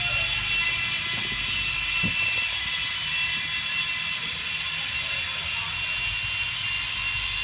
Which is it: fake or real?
real